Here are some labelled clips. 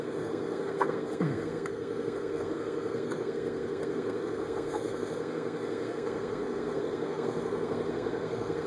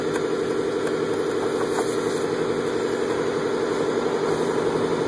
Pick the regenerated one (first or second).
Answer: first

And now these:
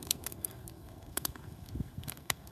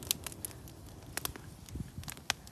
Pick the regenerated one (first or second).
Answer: first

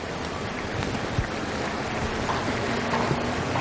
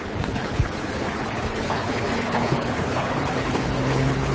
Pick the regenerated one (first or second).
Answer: second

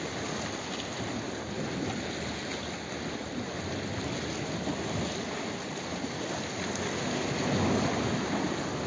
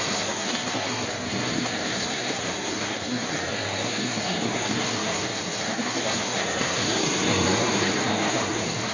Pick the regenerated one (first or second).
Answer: second